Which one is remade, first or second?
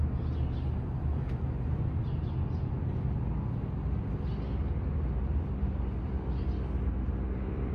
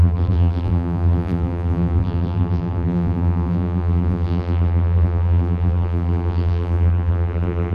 second